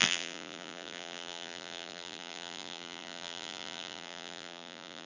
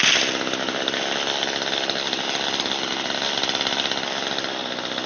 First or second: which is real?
second